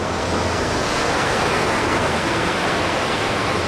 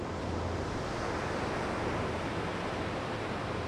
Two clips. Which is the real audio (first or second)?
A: second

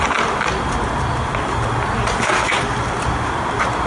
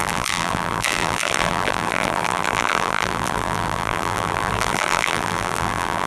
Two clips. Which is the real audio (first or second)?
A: first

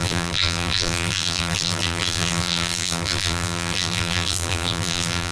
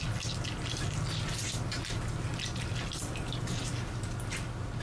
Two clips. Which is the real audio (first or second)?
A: second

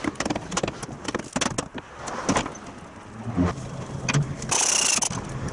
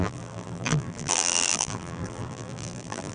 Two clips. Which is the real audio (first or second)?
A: first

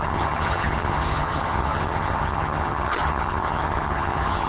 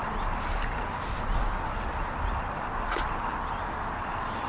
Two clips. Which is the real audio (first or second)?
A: second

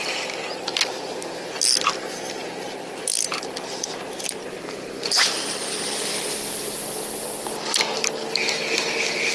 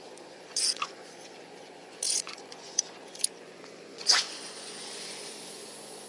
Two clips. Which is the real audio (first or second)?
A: first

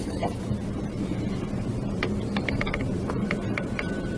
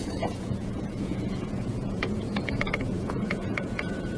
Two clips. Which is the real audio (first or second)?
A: first